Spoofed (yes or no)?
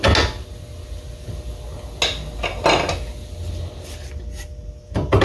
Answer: no